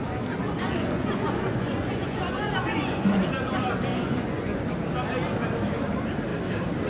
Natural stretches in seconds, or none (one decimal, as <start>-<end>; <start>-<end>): 0.0-0.4; 3.2-3.9; 4.6-6.9